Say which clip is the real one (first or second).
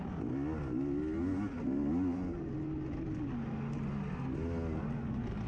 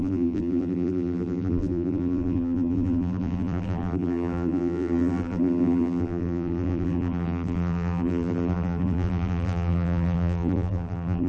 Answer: first